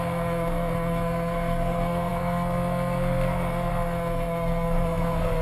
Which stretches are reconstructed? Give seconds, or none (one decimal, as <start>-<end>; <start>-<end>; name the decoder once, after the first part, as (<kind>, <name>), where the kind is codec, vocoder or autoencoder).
0.0-5.4 (codec, SNAC)